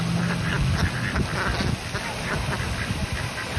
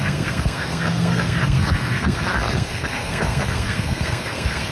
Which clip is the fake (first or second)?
second